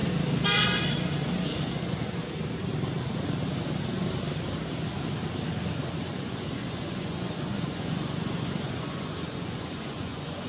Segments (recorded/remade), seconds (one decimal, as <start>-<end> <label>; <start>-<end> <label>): 0.0-1.7 recorded; 1.7-2.2 remade; 2.2-6.0 recorded; 6.0-10.5 remade